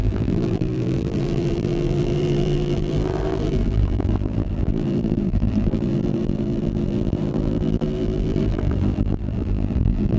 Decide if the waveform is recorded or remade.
remade